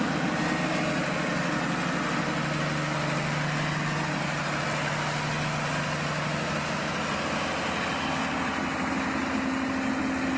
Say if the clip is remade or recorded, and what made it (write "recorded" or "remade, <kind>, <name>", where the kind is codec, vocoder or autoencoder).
recorded